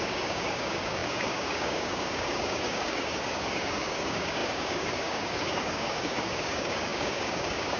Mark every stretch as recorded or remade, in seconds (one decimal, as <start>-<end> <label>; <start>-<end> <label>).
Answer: 0.0-7.8 remade